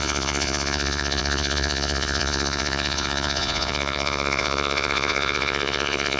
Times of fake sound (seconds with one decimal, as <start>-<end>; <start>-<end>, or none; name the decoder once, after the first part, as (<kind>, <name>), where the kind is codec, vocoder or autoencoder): 0.0-6.2 (vocoder, Vocos)